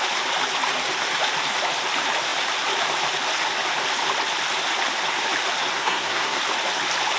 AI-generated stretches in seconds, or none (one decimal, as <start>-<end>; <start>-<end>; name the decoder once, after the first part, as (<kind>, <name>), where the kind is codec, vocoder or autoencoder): 5.7-6.4 (codec, SNAC)